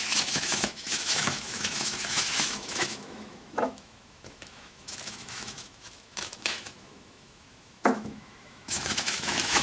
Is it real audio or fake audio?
fake